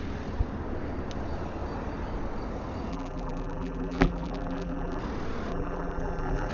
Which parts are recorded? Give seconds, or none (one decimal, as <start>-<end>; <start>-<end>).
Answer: 0.0-2.9; 5.0-5.5